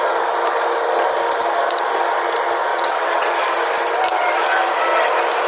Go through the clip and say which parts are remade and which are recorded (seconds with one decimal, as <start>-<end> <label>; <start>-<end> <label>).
0.0-2.7 recorded; 2.7-3.3 remade; 3.3-5.5 recorded